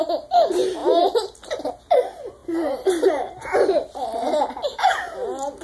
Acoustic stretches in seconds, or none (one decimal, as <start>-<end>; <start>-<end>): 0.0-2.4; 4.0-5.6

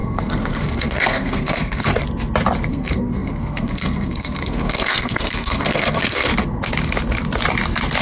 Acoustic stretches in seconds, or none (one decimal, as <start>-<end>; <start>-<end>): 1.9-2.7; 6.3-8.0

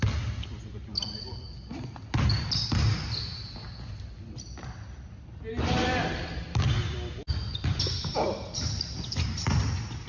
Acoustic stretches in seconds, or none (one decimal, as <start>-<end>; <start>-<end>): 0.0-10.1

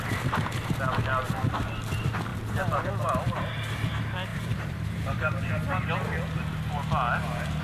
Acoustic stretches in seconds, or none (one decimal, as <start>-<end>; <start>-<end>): 0.0-4.3; 5.9-7.6

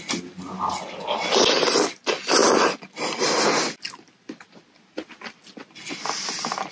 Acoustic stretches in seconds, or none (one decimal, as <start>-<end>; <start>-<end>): 0.0-6.7

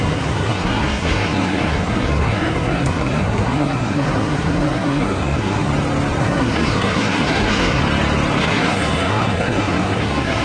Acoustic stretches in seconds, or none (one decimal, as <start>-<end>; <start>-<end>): 5.7-6.2; 7.8-8.4

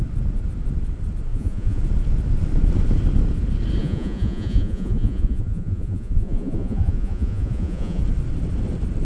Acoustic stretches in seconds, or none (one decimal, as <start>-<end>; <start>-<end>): 0.0-1.3; 1.8-3.8; 8.0-9.0